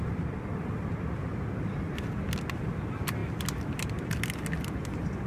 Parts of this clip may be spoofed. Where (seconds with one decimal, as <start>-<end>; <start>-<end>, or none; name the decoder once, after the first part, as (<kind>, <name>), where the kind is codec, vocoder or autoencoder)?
none